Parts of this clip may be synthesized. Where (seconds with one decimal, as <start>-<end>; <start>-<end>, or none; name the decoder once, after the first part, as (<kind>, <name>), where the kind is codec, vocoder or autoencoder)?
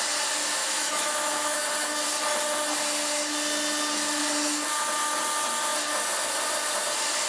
0.6-1.6 (autoencoder, DAC-VAE)